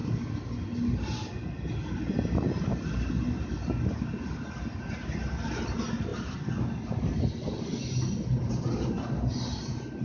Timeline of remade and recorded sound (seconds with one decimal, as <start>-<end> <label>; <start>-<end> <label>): 0.0-10.0 recorded